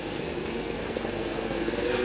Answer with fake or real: fake